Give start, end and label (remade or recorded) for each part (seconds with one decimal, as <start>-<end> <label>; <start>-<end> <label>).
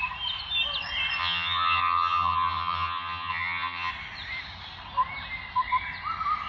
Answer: 0.0-1.2 recorded; 1.2-3.9 remade; 3.9-6.5 recorded